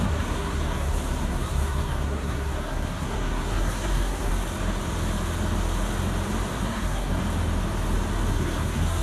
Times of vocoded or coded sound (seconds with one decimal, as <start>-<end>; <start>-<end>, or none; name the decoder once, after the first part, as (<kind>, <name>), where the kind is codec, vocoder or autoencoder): 0.0-4.3 (codec, SNAC); 6.6-7.2; 8.3-9.0